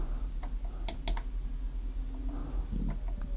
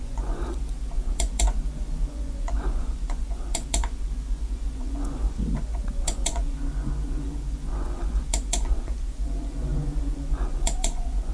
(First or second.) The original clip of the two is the first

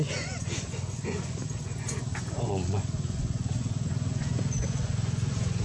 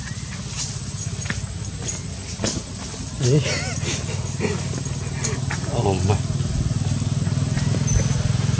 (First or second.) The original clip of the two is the second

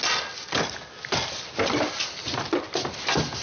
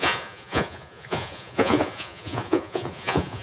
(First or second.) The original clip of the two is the first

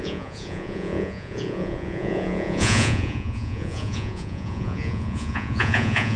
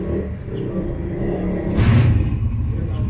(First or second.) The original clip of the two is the second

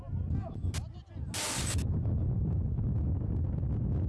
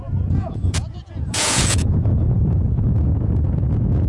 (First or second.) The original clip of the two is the first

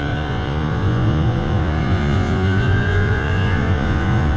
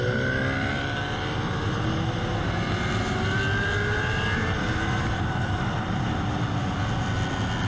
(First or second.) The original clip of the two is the second